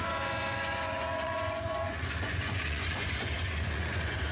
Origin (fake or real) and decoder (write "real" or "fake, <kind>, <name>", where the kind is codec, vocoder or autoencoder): fake, vocoder, Vocos